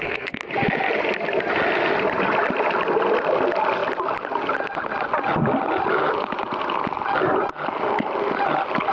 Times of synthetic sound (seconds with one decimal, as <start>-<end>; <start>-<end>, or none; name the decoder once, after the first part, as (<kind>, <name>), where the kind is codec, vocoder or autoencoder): 0.0-0.5 (codec, SNAC)